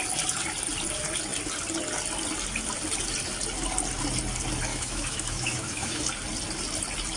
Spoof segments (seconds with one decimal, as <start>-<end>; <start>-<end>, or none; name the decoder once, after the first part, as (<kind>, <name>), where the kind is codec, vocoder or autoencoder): 4.7-6.0 (autoencoder, DAC-VAE)